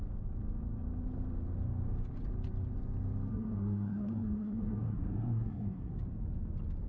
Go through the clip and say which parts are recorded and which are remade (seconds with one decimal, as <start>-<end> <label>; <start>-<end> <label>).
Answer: 0.0-3.3 recorded; 3.3-5.9 remade; 5.9-6.9 recorded